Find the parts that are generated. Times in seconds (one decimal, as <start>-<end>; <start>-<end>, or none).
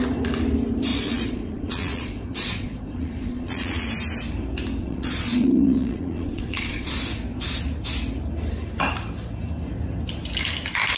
0.9-3.9; 4.8-6.9